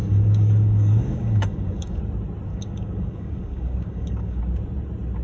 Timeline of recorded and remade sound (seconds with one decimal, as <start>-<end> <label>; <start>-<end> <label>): 0.0-2.0 remade; 2.0-2.5 recorded; 2.5-4.4 remade; 4.4-5.2 recorded